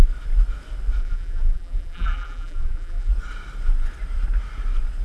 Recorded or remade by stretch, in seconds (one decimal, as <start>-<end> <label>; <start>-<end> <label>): 0.0-1.0 recorded; 1.0-3.1 remade; 3.1-5.0 recorded